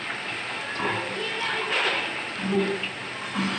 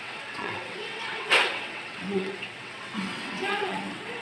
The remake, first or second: second